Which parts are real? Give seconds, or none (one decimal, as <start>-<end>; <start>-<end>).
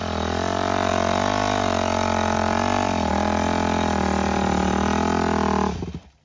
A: 0.0-6.2